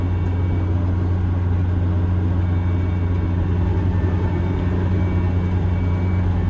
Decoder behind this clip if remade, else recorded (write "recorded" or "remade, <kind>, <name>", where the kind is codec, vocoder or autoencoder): recorded